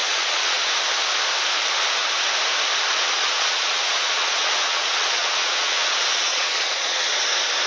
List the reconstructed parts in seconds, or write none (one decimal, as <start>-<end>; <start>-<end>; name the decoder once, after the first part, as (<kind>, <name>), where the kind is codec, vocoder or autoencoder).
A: 0.0-0.7 (vocoder, Vocos); 2.9-7.1